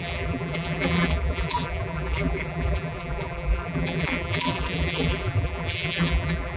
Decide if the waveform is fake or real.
fake